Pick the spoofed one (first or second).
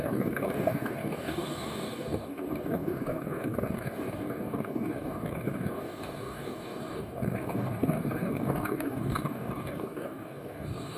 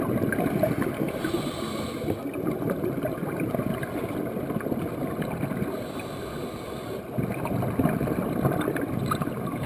first